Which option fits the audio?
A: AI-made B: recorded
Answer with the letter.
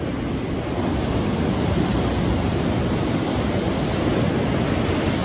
B